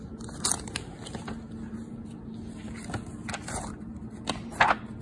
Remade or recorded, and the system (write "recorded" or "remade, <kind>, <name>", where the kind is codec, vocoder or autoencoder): recorded